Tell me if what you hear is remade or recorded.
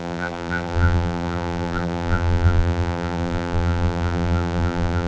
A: remade